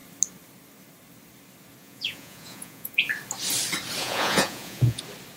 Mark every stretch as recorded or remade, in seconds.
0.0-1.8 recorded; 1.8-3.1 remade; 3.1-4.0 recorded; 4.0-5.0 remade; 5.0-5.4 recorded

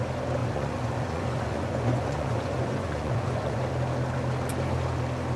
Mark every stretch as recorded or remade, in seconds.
0.0-0.4 recorded; 0.4-3.6 remade; 3.6-5.4 recorded

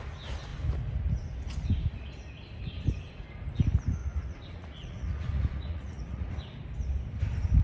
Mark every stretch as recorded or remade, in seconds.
0.0-4.0 recorded; 4.0-6.4 remade; 6.4-7.6 recorded

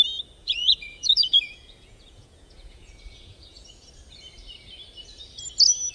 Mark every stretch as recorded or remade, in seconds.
0.0-0.4 recorded; 0.4-3.9 remade; 3.9-5.9 recorded

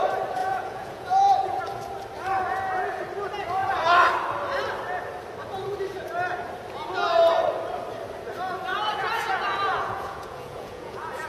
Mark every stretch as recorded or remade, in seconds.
0.0-0.4 recorded; 0.4-1.6 remade; 1.6-8.7 recorded; 8.7-11.3 remade

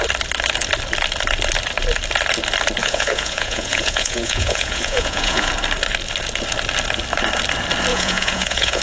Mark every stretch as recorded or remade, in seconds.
0.0-2.8 recorded; 2.8-5.5 remade; 5.5-7.9 recorded; 7.9-8.8 remade